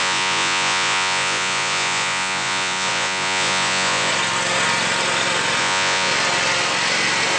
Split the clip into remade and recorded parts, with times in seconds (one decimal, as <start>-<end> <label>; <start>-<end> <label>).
0.0-4.1 remade; 4.1-5.6 recorded; 5.6-6.1 remade; 6.1-7.4 recorded